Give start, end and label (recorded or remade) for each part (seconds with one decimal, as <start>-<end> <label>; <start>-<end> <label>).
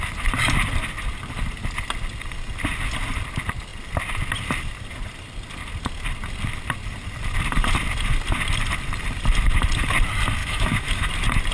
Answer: 0.0-10.4 recorded; 10.4-11.1 remade; 11.1-11.5 recorded